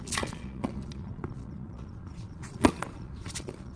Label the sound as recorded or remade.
remade